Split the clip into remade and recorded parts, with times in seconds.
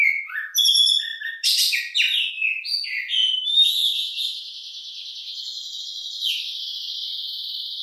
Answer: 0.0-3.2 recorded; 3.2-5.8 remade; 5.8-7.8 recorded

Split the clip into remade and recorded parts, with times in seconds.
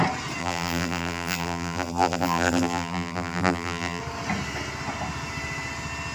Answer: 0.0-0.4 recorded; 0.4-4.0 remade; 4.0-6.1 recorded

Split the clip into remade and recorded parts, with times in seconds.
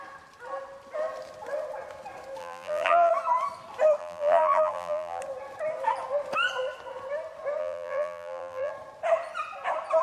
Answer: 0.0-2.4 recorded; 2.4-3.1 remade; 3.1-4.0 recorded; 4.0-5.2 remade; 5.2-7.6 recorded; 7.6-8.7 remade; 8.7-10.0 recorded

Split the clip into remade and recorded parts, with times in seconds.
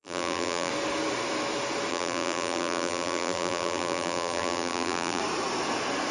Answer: 0.0-0.7 remade; 0.7-1.9 recorded; 1.9-5.2 remade; 5.2-6.1 recorded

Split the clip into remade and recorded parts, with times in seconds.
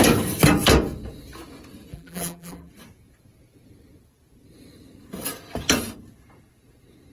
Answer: 0.0-1.9 recorded; 1.9-2.7 remade; 2.7-7.1 recorded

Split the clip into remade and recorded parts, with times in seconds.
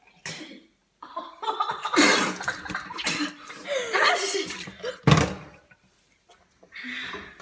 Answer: 0.0-0.8 recorded; 0.8-5.0 remade; 5.0-7.4 recorded